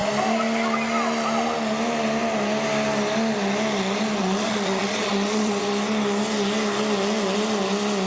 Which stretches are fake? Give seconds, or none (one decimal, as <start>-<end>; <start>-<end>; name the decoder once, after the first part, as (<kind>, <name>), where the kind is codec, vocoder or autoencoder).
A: 4.2-5.7 (vocoder, Vocos)